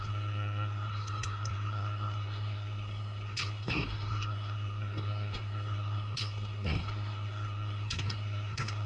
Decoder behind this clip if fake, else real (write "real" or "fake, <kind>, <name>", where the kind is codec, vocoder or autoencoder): fake, codec, SNAC